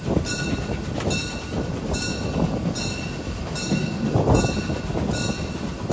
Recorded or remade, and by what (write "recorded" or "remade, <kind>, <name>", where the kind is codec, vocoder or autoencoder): recorded